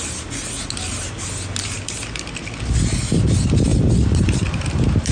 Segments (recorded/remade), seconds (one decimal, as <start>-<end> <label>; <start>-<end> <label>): 0.0-3.7 recorded; 3.7-4.5 remade; 4.5-5.1 recorded